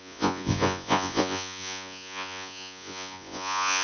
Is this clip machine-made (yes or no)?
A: yes